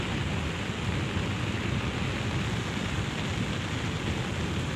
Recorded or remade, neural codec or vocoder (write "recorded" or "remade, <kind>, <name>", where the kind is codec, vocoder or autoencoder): recorded